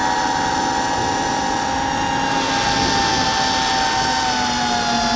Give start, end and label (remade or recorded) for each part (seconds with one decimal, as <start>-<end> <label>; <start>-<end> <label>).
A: 0.0-5.2 recorded